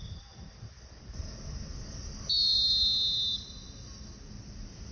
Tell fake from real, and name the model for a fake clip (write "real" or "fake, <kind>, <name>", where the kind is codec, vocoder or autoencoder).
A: real